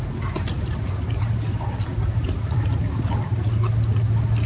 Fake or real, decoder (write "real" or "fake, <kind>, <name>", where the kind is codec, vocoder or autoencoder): real